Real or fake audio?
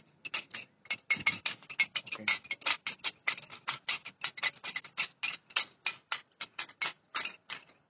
real